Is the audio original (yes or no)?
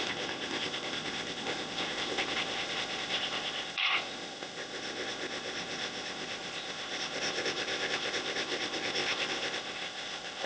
no